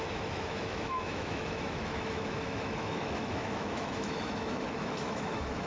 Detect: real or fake fake